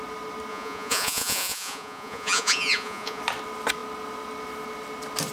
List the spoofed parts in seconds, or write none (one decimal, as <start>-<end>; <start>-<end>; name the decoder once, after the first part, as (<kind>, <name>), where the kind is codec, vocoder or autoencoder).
0.5-3.2 (vocoder, Vocos)